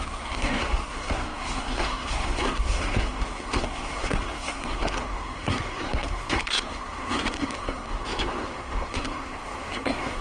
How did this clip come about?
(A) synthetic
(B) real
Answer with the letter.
A